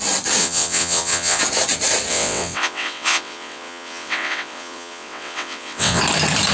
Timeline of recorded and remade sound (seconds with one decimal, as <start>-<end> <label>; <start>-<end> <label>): 0.0-0.4 recorded; 0.4-1.4 remade; 1.4-2.1 recorded; 2.1-6.0 remade; 6.0-6.5 recorded

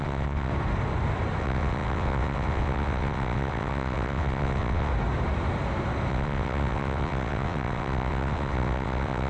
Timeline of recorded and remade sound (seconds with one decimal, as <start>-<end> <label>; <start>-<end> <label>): 0.0-0.5 remade; 0.5-1.4 recorded; 1.4-4.9 remade; 4.9-6.1 recorded; 6.1-9.3 remade

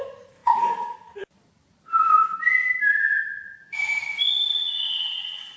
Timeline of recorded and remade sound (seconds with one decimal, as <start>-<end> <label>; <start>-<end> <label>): 0.0-4.5 recorded; 4.5-5.6 remade

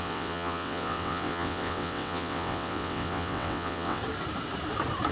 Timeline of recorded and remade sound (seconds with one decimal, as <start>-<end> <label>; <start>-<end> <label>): 0.0-4.0 remade; 4.0-5.1 recorded

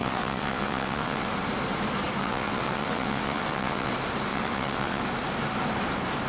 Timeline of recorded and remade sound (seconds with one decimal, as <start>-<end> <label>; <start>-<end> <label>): 0.0-1.3 remade; 1.3-2.2 recorded; 2.2-3.9 remade; 3.9-4.3 recorded; 4.3-5.0 remade; 5.0-6.3 recorded

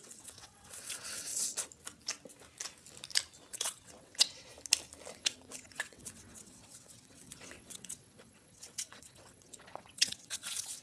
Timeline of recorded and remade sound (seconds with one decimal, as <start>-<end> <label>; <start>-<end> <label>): 0.0-1.3 remade; 1.3-3.5 recorded; 3.5-4.5 remade; 4.5-5.1 recorded; 5.1-10.8 remade

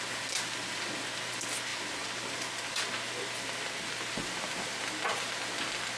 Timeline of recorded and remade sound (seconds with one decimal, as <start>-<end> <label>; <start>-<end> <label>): 0.0-6.0 recorded